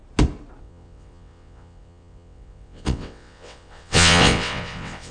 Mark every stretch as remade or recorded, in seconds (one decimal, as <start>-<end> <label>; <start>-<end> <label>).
0.0-0.6 recorded; 0.6-5.1 remade